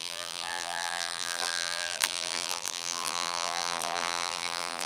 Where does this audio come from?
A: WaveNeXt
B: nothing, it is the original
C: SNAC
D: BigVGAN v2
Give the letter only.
D